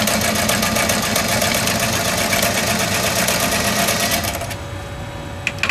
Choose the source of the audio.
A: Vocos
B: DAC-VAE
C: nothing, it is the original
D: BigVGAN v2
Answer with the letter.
C